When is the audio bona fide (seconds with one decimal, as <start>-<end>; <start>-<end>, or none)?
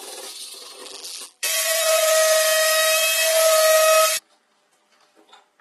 0.0-0.8; 2.1-5.6